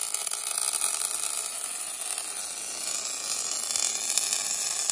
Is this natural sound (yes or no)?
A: yes